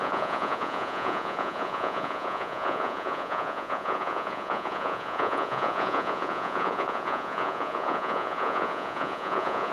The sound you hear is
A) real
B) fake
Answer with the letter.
B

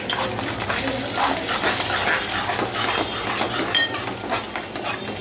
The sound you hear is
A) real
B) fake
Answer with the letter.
A